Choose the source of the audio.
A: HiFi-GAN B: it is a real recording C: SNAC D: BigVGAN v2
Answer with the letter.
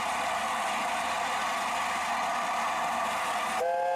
B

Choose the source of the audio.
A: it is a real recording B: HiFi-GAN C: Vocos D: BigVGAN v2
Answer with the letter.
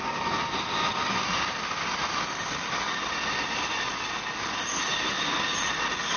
A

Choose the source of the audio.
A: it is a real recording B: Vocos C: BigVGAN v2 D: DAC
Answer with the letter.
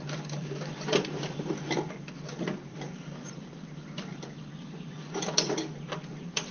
C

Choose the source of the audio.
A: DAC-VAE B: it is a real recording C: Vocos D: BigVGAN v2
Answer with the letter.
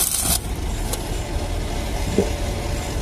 B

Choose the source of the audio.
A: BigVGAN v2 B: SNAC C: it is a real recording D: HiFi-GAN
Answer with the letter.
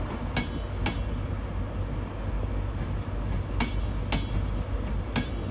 C